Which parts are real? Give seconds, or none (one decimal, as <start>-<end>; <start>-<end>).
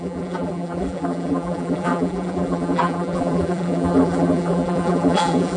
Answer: none